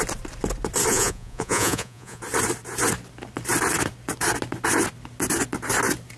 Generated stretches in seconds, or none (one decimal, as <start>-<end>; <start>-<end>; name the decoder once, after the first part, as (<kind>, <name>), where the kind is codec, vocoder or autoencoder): 0.9-2.2 (vocoder, Vocos)